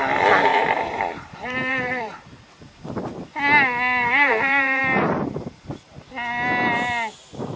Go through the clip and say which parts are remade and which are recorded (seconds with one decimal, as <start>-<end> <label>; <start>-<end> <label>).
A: 0.0-0.5 recorded; 0.5-2.5 remade; 2.5-4.0 recorded; 4.0-4.8 remade; 4.8-7.6 recorded